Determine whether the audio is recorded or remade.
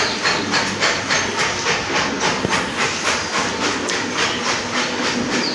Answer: recorded